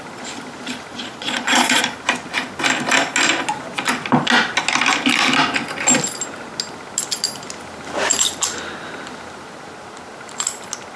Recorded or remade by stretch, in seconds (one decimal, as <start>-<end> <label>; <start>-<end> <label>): 0.0-0.9 recorded; 0.9-1.8 remade; 1.8-11.0 recorded